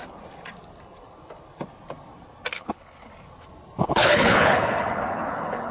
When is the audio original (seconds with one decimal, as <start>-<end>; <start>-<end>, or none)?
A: 0.0-2.5; 3.1-3.8